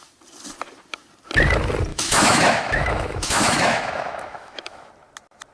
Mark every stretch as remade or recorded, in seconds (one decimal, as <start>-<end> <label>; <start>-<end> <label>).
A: 0.0-1.9 recorded; 1.9-4.9 remade; 4.9-5.5 recorded